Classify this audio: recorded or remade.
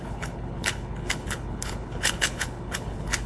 remade